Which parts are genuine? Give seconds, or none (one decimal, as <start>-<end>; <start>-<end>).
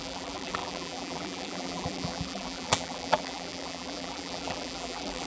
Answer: none